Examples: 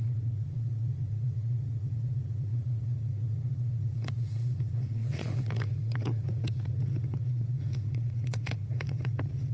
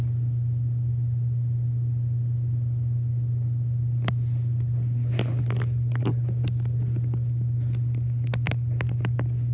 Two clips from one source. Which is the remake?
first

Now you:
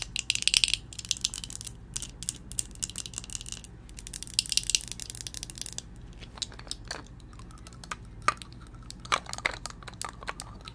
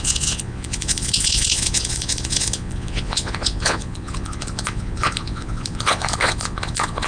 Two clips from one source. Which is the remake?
second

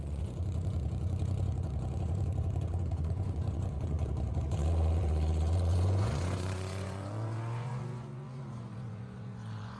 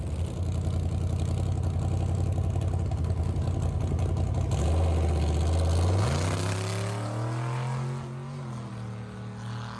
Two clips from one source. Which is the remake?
first